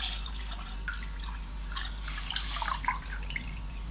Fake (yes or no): yes